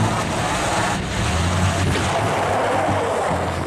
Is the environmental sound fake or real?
real